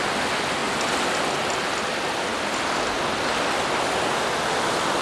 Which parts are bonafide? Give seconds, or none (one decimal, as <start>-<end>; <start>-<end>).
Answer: 0.0-5.0